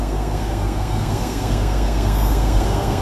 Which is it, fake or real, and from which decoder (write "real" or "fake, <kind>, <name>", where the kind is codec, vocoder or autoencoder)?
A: fake, codec, SNAC